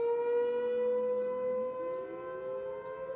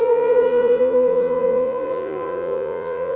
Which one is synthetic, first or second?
second